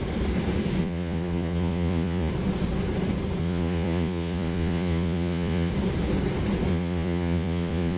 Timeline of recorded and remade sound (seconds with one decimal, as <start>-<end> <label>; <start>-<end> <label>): 0.0-0.8 recorded; 0.8-2.3 remade; 2.3-3.4 recorded; 3.4-5.7 remade; 5.7-6.7 recorded; 6.7-8.0 remade